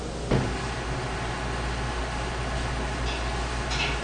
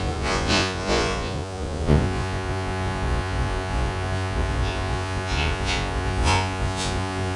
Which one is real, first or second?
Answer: first